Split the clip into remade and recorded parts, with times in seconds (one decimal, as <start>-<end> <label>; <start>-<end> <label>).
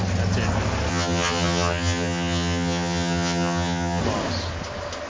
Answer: 0.0-0.9 recorded; 0.9-4.0 remade; 4.0-5.1 recorded